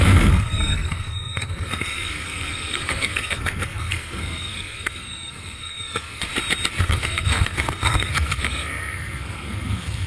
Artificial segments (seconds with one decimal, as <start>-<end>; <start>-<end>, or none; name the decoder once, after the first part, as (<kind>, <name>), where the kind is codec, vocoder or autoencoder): 0.0-6.3 (codec, SNAC); 6.8-10.1